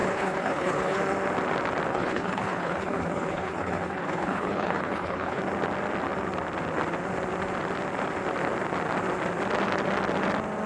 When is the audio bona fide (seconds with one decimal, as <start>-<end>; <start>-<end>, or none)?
1.0-1.9; 5.4-10.7